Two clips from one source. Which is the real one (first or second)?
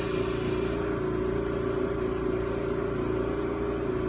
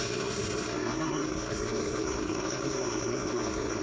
first